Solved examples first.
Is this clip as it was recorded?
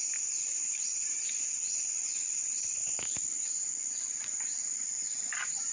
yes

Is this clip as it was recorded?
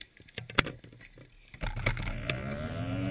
yes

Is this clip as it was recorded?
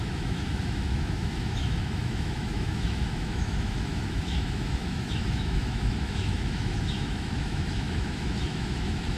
no